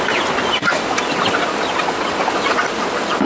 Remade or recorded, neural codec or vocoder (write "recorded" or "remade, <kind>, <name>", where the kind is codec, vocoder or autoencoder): recorded